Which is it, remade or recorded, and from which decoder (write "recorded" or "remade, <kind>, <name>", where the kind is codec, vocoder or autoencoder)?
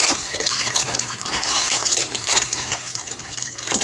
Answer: remade, codec, SNAC